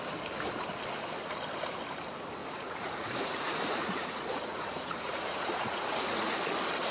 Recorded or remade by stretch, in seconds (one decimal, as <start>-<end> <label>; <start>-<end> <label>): 0.0-2.4 recorded; 2.4-6.4 remade; 6.4-6.9 recorded